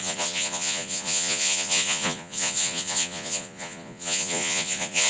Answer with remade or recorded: remade